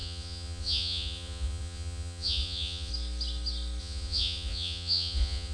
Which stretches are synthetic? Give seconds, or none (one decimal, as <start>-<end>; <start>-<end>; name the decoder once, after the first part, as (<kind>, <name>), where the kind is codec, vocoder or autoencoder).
0.0-2.9 (vocoder, Vocos); 3.8-5.5